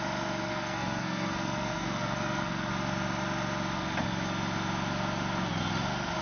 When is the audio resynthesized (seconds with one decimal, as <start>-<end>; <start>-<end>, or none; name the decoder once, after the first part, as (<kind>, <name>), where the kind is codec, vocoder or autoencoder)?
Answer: 0.5-2.7 (codec, SNAC)